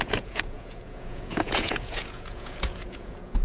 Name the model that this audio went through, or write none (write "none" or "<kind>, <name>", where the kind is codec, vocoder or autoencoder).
vocoder, Vocos